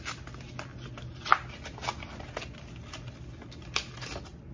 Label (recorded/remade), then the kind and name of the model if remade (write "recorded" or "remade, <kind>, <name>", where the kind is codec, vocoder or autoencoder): recorded